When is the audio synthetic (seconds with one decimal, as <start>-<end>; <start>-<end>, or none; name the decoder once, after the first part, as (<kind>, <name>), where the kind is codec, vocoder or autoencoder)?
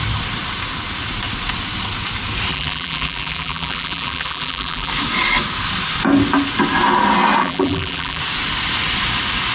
2.5-4.9 (vocoder, BigVGAN v2); 7.4-8.2